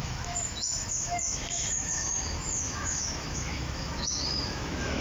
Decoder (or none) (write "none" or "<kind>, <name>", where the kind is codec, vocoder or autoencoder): autoencoder, DAC-VAE